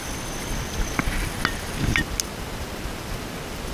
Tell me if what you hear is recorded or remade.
recorded